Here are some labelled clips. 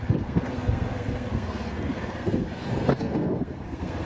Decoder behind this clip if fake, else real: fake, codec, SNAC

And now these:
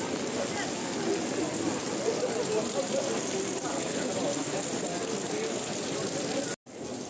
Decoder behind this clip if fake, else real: real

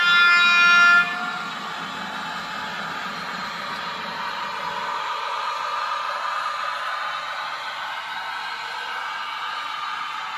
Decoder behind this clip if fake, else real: real